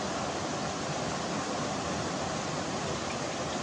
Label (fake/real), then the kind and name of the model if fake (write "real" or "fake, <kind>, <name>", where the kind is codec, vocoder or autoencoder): real